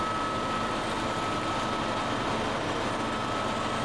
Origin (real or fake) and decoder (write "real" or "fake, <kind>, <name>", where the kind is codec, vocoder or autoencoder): real